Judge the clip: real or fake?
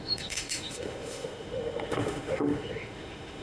fake